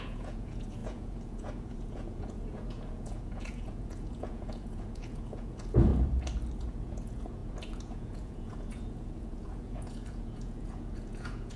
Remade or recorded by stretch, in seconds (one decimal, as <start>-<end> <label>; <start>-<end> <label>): 0.0-5.9 remade; 5.9-6.6 recorded; 6.6-11.6 remade